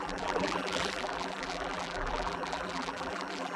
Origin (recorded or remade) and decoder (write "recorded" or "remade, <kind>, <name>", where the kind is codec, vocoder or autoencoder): remade, vocoder, BigVGAN v2